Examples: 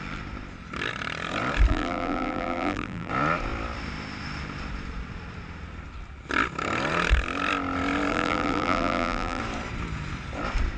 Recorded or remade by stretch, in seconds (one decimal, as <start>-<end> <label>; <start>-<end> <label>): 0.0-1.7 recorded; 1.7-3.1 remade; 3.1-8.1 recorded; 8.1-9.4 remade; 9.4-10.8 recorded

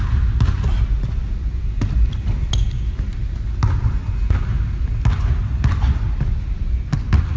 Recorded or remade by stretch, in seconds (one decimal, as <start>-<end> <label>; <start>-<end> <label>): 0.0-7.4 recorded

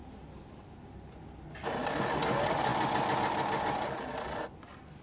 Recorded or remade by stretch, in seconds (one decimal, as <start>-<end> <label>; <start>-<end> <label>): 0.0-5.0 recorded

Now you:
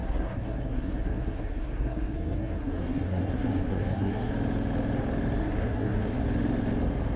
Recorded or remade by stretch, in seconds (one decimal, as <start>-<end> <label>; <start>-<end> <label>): 0.0-4.3 remade; 4.3-5.4 recorded; 5.4-6.2 remade; 6.2-7.2 recorded